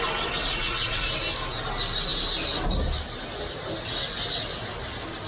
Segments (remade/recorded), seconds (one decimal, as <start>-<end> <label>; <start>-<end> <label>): 0.0-0.4 recorded; 0.4-1.1 remade; 1.1-5.3 recorded